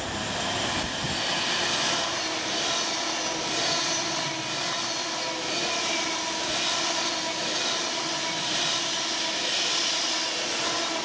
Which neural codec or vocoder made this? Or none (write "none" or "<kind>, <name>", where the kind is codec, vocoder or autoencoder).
none